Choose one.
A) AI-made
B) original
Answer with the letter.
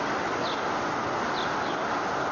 B